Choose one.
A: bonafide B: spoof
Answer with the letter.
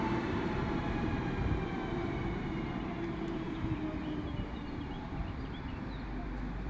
B